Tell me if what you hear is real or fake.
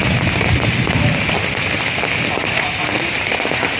real